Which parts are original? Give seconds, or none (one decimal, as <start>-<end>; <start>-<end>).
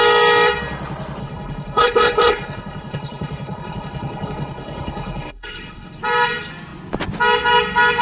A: 0.0-1.2; 6.0-8.0